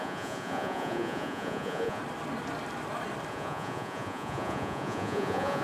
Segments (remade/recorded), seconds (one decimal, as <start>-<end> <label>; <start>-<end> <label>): 0.0-2.0 remade; 2.0-3.3 recorded; 3.3-5.6 remade